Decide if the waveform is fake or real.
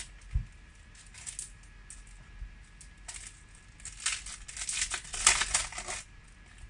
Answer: real